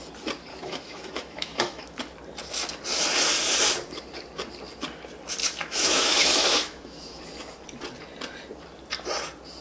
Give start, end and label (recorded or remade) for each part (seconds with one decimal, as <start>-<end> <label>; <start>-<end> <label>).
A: 0.0-0.5 recorded; 0.5-2.0 remade; 2.0-5.4 recorded; 5.4-7.2 remade; 7.2-9.6 recorded